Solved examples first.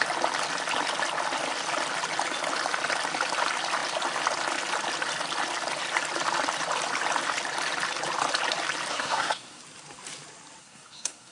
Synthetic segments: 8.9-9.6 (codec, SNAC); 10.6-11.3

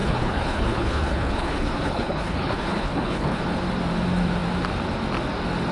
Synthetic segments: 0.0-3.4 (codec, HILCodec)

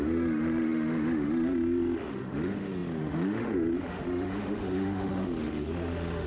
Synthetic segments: 0.0-6.3 (autoencoder, DAC-VAE)

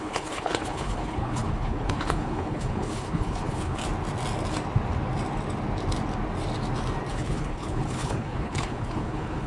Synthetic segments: 0.0-3.8 (codec, HILCodec); 7.1-9.5